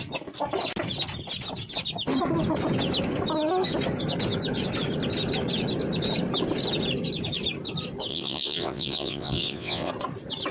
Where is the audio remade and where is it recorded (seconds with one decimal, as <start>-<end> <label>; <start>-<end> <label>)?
0.0-8.1 recorded; 8.1-9.9 remade; 9.9-10.5 recorded

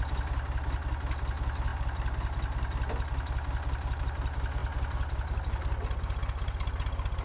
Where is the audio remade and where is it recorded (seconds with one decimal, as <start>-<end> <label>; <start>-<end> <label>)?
0.0-7.2 recorded